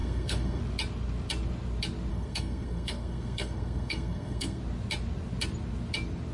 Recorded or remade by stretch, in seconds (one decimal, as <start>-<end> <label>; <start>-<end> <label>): 0.0-0.6 remade; 0.6-2.1 recorded; 2.1-4.6 remade; 4.6-6.3 recorded